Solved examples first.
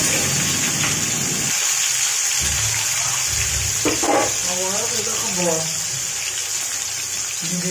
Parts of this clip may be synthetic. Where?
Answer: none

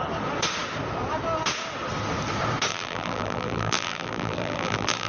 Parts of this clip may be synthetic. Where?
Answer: 2.7-5.1 (vocoder, BigVGAN v2)

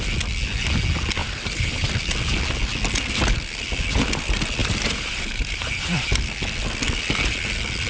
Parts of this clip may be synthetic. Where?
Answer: 1.2-1.9 (vocoder, BigVGAN v2); 4.6-6.1

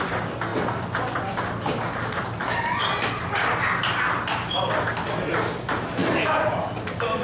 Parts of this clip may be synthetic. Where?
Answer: 6.0-6.6 (vocoder, BigVGAN v2)

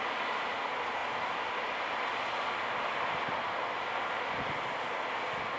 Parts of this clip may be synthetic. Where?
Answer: none